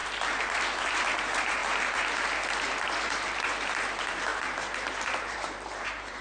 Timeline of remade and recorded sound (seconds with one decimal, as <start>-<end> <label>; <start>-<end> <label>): 0.0-0.8 recorded; 0.8-1.6 remade; 1.6-3.1 recorded; 3.1-6.2 remade